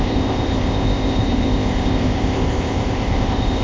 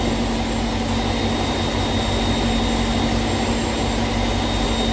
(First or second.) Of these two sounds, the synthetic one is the first